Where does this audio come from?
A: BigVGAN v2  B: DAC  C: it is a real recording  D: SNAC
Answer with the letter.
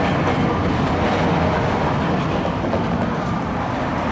C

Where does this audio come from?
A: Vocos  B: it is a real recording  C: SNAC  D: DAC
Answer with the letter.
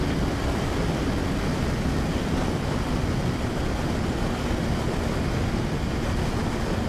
B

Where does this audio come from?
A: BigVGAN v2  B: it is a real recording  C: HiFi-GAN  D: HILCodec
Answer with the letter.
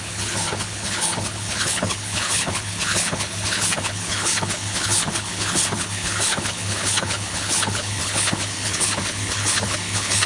D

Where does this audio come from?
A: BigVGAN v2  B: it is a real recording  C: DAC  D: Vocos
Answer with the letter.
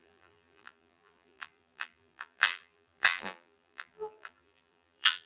A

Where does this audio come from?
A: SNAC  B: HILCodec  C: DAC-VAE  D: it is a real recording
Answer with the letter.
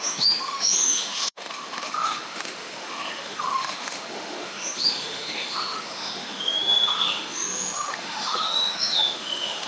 C